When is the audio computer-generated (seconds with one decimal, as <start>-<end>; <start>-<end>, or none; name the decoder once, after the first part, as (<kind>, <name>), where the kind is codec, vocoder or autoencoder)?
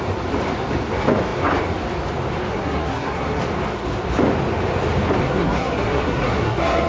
2.5-3.4 (codec, SNAC); 5.2-6.9